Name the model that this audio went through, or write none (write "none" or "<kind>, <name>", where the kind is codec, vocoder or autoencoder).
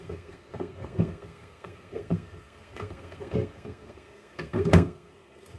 codec, SNAC